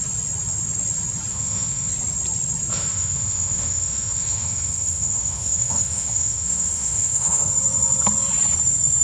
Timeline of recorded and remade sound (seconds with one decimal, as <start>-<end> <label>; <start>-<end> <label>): 0.0-1.3 recorded; 1.3-1.9 remade; 1.9-2.7 recorded; 2.7-7.5 remade; 7.5-9.0 recorded